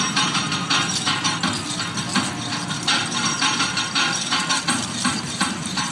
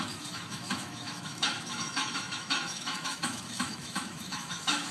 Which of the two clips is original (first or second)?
first